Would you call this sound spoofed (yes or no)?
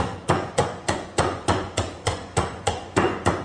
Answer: yes